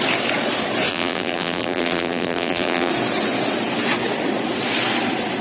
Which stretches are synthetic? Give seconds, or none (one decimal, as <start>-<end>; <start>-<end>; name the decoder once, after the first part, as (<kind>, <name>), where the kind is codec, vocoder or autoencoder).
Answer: 0.9-2.9 (vocoder, BigVGAN v2)